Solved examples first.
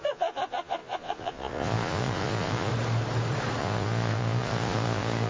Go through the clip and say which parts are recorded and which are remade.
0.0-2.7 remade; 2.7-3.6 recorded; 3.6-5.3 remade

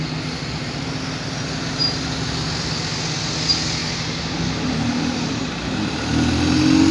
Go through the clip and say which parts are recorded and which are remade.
0.0-6.9 recorded